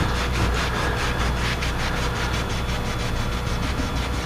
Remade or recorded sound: recorded